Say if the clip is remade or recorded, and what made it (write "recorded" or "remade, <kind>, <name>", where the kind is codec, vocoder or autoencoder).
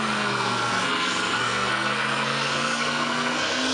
remade, codec, SNAC